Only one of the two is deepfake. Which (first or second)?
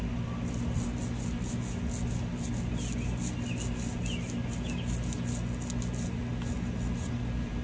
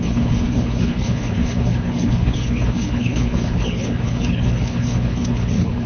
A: second